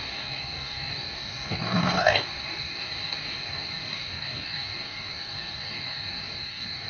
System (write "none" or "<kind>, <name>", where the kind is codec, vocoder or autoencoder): codec, DAC